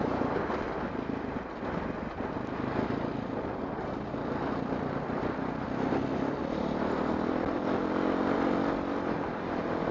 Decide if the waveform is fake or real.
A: real